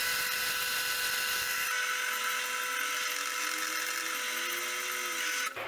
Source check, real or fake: real